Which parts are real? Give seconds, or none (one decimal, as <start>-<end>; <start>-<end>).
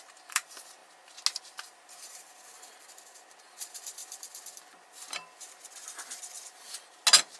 0.8-1.4; 2.5-3.4; 4.0-7.4